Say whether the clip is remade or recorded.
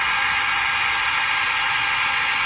recorded